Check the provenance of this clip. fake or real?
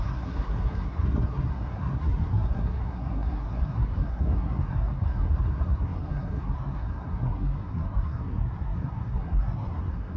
fake